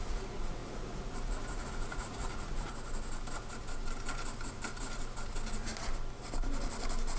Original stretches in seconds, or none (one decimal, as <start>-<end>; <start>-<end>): 2.7-7.2